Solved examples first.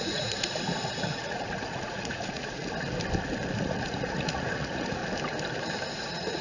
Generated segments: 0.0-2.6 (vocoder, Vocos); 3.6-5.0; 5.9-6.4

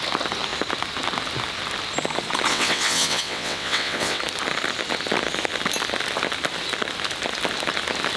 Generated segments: 2.5-4.2 (vocoder, WaveNeXt)

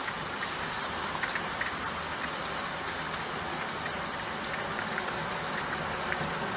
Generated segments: none

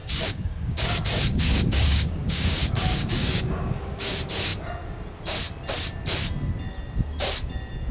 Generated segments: 0.0-4.1 (codec, DAC)

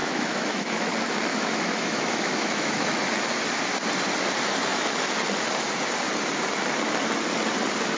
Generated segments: 0.0-0.9 (autoencoder, DAC-VAE); 1.3-3.0